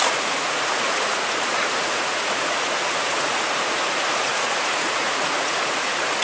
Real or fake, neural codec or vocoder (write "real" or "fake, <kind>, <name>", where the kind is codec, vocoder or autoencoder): fake, vocoder, Vocos